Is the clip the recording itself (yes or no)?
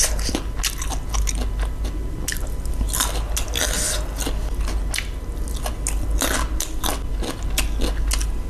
yes